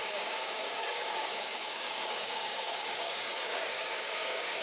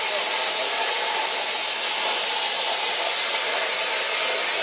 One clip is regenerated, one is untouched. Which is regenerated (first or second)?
first